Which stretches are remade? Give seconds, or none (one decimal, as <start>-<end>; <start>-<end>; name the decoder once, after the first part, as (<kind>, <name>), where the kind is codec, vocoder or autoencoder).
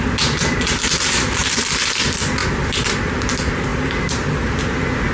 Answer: 1.4-2.0 (vocoder, BigVGAN v2); 2.4-3.0; 3.7-4.6